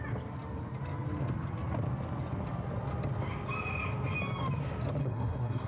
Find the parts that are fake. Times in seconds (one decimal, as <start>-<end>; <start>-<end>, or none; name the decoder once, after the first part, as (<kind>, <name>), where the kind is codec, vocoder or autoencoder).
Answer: 5.0-5.7 (codec, SNAC)